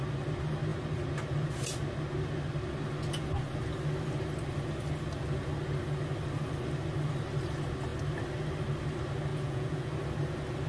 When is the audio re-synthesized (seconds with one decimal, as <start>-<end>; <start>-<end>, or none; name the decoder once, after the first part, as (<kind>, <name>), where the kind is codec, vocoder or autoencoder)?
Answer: 9.3-9.9 (vocoder, Vocos)